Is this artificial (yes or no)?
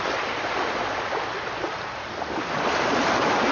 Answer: no